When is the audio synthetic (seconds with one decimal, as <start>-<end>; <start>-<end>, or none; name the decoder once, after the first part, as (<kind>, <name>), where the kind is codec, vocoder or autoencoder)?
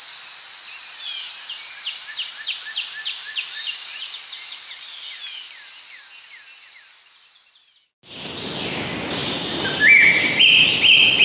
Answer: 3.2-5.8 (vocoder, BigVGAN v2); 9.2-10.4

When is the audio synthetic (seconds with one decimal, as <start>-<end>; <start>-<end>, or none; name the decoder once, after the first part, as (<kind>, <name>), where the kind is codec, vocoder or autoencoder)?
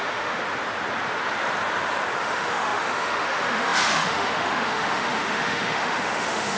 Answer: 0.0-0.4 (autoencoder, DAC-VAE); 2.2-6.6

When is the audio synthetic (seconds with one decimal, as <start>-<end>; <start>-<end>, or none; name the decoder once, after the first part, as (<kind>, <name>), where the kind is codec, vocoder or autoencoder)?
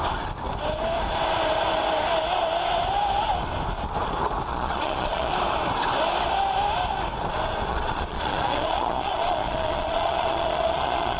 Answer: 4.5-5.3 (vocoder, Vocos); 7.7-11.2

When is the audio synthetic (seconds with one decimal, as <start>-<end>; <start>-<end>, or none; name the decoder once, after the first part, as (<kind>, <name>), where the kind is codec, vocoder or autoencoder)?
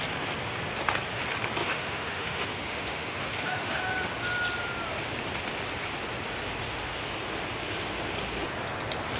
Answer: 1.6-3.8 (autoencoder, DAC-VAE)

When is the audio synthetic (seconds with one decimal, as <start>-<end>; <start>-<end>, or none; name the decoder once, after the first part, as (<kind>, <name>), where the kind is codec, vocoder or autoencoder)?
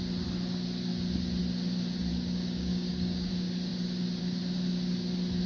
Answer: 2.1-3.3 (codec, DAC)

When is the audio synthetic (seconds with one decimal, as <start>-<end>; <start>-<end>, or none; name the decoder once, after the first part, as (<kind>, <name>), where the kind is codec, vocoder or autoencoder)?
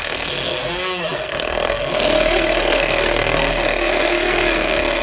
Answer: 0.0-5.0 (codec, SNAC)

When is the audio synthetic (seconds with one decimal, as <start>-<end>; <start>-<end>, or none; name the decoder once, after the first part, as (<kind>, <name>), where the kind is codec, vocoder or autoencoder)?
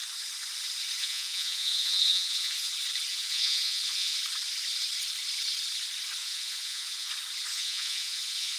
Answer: 1.0-2.7 (vocoder, Vocos); 3.1-4.2; 6.2-7.1; 7.5-8.6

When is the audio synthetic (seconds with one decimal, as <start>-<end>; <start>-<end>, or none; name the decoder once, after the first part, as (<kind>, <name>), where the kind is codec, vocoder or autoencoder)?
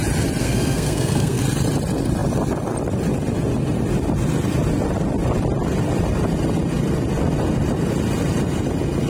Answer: 0.4-1.4 (codec, SNAC)